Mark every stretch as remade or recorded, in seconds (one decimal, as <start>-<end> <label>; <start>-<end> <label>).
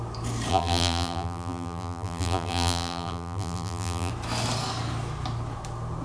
0.0-0.5 recorded; 0.5-4.1 remade; 4.1-6.0 recorded